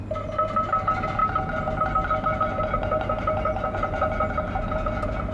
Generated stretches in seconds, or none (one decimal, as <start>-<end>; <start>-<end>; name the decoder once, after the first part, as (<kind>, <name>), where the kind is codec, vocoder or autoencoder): none